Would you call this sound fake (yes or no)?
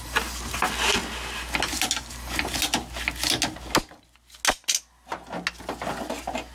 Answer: no